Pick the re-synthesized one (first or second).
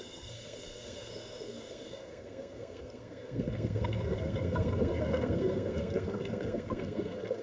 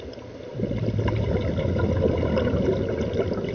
first